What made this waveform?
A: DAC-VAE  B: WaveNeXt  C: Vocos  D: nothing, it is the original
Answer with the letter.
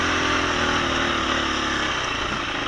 D